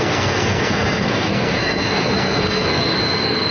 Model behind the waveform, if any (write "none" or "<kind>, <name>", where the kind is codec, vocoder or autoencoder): codec, SNAC